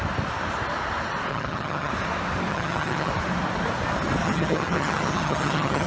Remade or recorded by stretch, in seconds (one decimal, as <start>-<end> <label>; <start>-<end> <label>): 0.0-1.3 recorded; 1.3-1.9 remade; 1.9-2.5 recorded; 2.5-3.1 remade; 3.1-4.2 recorded; 4.2-5.9 remade